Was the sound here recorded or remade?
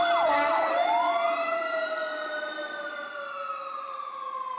recorded